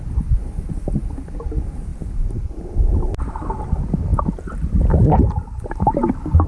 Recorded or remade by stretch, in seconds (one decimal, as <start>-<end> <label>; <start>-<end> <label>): 0.0-1.9 recorded; 1.9-3.6 remade; 3.6-6.5 recorded